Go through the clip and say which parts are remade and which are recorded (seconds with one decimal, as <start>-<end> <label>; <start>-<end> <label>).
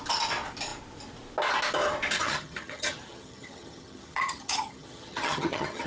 0.0-2.2 recorded; 2.2-5.9 remade